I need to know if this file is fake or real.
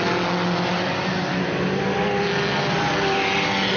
real